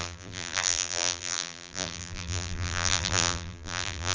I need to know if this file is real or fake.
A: fake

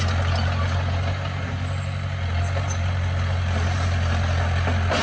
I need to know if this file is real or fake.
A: real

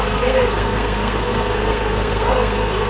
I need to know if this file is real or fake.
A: fake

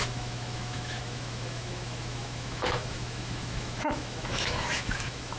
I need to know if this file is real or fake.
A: fake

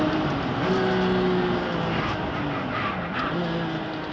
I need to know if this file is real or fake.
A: real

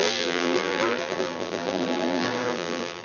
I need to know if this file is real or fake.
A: fake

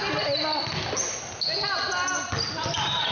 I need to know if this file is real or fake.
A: real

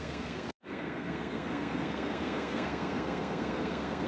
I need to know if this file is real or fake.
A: fake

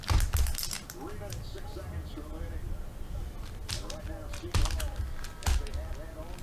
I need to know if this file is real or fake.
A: real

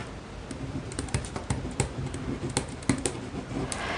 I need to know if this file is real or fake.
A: real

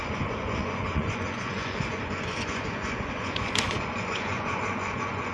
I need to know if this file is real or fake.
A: fake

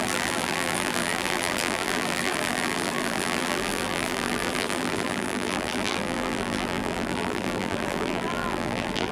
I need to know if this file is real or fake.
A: fake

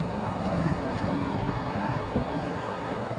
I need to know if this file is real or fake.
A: fake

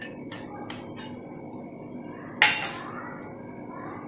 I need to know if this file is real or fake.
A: real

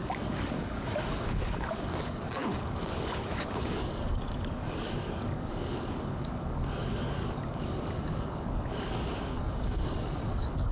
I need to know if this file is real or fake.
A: fake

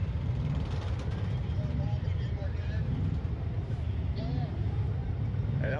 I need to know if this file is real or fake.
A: fake